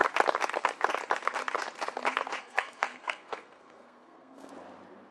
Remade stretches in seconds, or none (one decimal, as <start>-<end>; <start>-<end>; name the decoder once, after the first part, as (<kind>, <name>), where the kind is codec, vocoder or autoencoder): 2.4-4.5 (codec, SNAC)